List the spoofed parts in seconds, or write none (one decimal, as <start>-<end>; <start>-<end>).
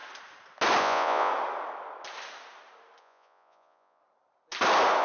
0.8-1.3; 3.0-4.0